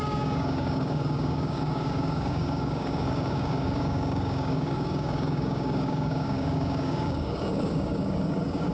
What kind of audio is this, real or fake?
fake